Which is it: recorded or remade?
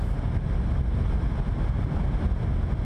recorded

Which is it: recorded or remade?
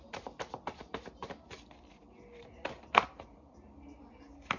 recorded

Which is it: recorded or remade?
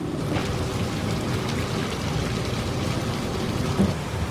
recorded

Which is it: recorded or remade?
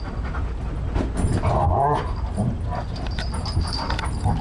recorded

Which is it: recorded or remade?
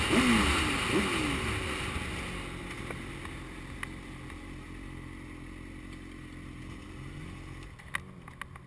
recorded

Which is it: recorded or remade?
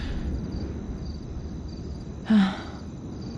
recorded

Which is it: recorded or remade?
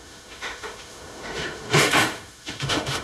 remade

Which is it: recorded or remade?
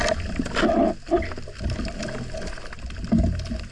recorded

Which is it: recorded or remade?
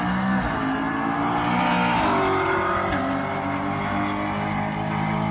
recorded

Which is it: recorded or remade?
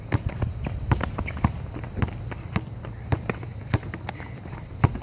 recorded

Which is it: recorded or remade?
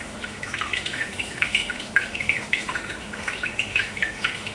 remade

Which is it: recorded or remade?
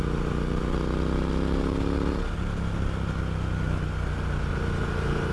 recorded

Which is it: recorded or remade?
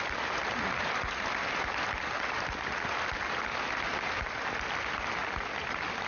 recorded